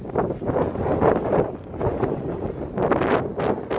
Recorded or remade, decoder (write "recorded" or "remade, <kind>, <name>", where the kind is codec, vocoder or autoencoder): remade, vocoder, BigVGAN v2